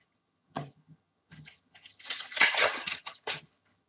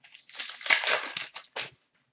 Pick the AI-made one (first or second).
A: first